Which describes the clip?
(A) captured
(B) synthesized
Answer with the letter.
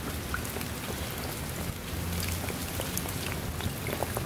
A